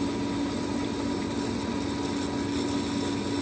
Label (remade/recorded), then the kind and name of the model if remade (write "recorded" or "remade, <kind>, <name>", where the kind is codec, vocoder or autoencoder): recorded